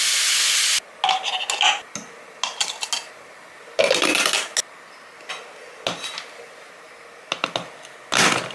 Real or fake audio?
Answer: real